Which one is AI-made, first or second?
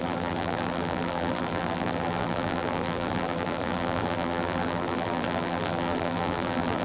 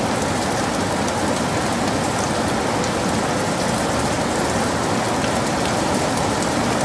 first